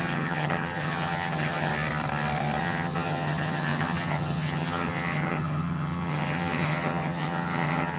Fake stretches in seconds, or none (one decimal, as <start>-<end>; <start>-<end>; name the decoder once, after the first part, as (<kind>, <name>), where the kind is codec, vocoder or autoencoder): 0.0-1.7 (vocoder, HiFi-GAN); 2.6-8.0